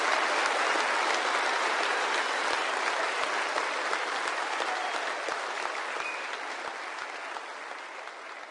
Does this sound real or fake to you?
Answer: real